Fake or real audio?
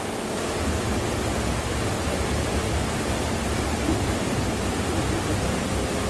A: real